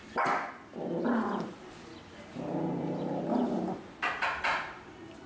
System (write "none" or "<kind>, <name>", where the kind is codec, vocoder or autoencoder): none